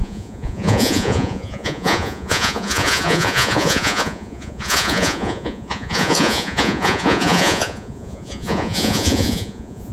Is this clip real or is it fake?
fake